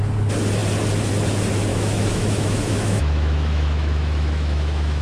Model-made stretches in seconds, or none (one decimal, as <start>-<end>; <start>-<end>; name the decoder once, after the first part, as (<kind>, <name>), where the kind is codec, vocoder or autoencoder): 1.7-5.0 (autoencoder, DAC-VAE)